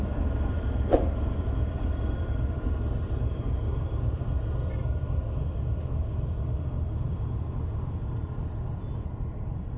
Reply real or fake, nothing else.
real